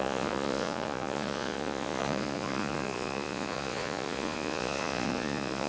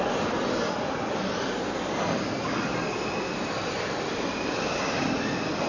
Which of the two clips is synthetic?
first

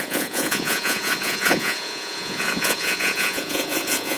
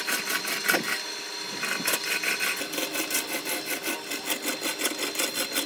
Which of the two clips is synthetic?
first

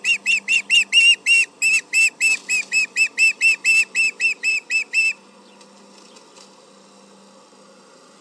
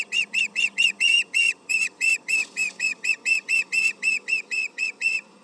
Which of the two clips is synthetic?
second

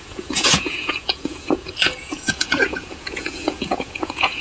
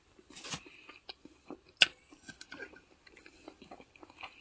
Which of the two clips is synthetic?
first